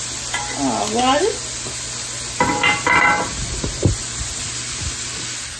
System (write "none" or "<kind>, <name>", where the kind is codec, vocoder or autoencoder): none